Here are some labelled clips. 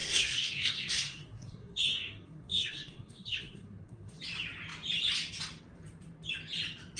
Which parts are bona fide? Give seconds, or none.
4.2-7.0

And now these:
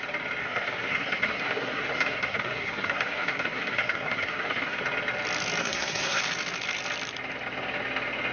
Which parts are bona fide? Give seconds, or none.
0.0-0.4; 4.8-5.6; 6.2-8.3

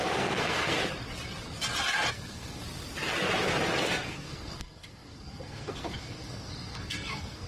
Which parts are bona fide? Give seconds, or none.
0.8-2.1; 2.6-3.8

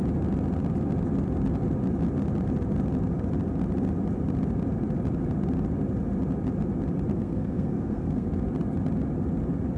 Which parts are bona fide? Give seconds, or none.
0.0-7.1; 8.3-9.8

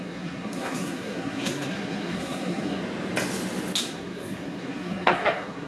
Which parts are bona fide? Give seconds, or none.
2.8-3.8

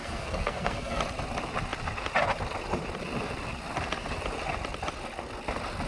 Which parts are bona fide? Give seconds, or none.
1.0-5.9